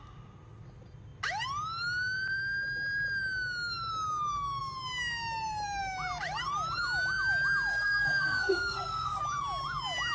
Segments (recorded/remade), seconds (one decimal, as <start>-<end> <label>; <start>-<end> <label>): 0.0-7.7 recorded; 7.7-9.2 remade; 9.2-10.1 recorded